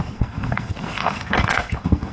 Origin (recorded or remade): remade